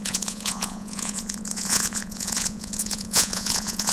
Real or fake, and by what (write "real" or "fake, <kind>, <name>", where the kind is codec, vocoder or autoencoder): fake, vocoder, Vocos